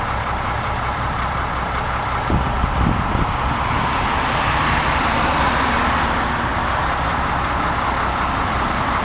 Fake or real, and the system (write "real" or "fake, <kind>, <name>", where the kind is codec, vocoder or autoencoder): real